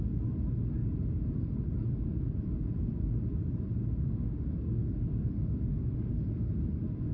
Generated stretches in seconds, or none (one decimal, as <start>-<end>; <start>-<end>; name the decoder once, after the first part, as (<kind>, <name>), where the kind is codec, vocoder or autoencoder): 4.1-6.5 (autoencoder, DAC-VAE)